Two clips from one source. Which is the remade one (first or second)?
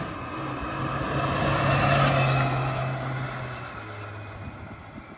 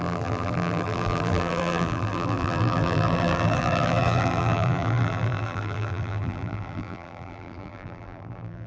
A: second